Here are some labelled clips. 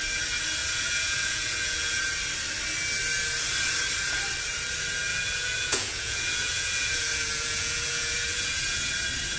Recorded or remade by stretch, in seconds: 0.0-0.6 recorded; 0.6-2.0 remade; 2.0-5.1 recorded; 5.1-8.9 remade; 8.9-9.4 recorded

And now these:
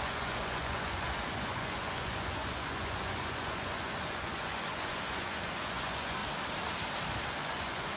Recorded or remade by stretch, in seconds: 0.0-6.2 remade; 6.2-7.4 recorded; 7.4-8.0 remade

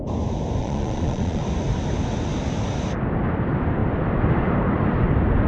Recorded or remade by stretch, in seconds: 0.0-0.6 recorded; 0.6-1.4 remade; 1.4-5.5 recorded

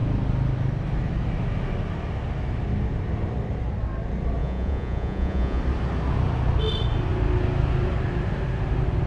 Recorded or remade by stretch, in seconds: 0.0-4.4 recorded; 4.4-5.6 remade; 5.6-9.1 recorded

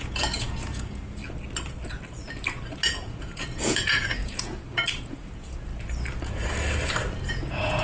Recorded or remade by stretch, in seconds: 0.0-1.2 remade; 1.2-2.9 recorded; 2.9-5.7 remade; 5.7-7.3 recorded; 7.3-7.8 remade

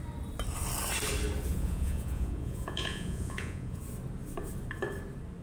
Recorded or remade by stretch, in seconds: 0.0-1.5 recorded; 1.5-3.8 remade; 3.8-5.4 recorded

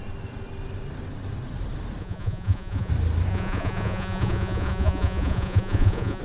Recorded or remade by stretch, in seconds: 0.0-2.0 recorded; 2.0-2.9 remade; 2.9-3.3 recorded; 3.3-6.2 remade